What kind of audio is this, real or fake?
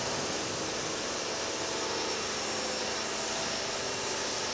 real